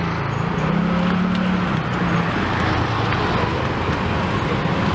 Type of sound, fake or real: real